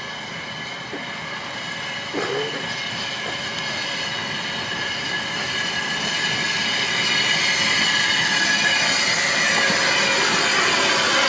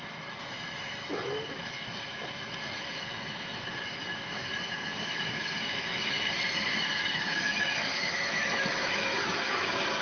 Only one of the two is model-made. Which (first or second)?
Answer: second